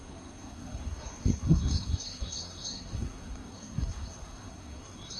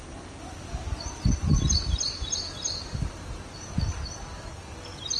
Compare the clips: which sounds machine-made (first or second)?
first